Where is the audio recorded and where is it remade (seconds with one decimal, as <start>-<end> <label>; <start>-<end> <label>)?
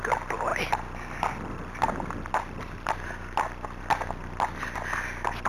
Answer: 0.0-5.5 recorded